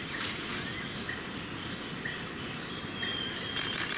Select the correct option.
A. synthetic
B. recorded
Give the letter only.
B